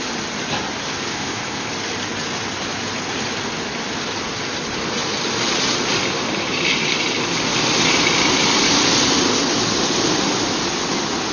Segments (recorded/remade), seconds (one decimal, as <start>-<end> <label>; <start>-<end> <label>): 0.0-1.1 recorded; 1.1-1.7 remade; 1.7-11.3 recorded

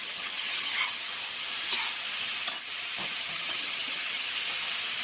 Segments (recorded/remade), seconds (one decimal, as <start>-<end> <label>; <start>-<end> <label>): 0.0-1.1 remade; 1.1-3.2 recorded; 3.2-4.3 remade; 4.3-5.0 recorded

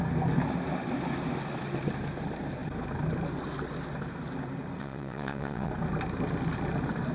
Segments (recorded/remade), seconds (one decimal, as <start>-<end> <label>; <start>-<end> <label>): 0.0-4.8 recorded; 4.8-5.7 remade; 5.7-7.1 recorded

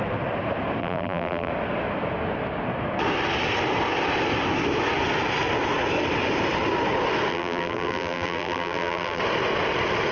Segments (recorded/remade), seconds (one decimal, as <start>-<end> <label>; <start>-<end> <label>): 0.0-0.8 recorded; 0.8-1.5 remade; 1.5-7.3 recorded; 7.3-9.2 remade; 9.2-10.1 recorded

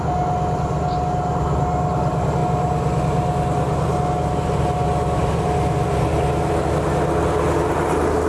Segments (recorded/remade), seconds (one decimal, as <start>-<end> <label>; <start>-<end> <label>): 0.0-8.3 recorded

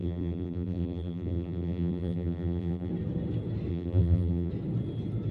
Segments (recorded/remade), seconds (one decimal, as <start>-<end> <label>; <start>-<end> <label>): 0.0-2.9 remade; 2.9-3.7 recorded; 3.7-4.5 remade; 4.5-5.3 recorded